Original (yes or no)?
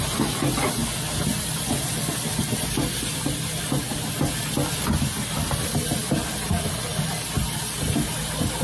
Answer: yes